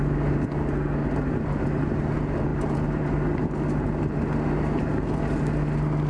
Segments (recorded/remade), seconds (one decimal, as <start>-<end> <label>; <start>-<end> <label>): 0.0-1.0 recorded; 1.0-1.7 remade; 1.7-2.5 recorded; 2.5-3.2 remade; 3.2-6.1 recorded